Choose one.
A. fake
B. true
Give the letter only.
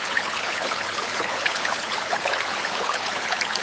A